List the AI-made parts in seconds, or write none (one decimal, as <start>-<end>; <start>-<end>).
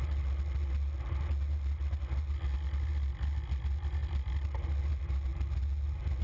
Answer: none